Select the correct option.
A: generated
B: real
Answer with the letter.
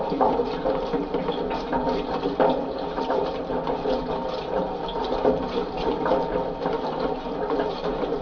A